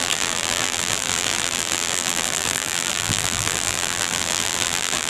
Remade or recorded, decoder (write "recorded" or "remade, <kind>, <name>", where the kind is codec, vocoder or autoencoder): remade, vocoder, BigVGAN v2